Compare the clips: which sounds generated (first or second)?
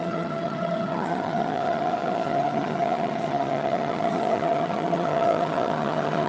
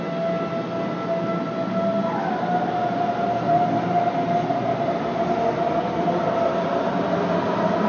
first